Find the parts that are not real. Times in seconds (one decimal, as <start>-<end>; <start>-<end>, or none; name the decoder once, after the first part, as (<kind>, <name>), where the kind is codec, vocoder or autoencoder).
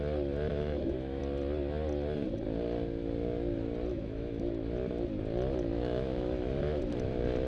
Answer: 0.5-1.2 (autoencoder, DAC-VAE); 3.9-4.5; 5.7-6.8